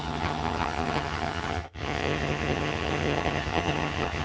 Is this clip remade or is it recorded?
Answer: remade